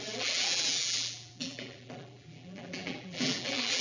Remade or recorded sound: remade